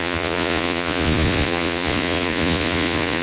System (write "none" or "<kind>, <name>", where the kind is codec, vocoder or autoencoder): vocoder, Vocos